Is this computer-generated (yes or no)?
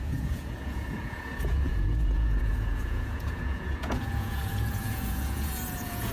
yes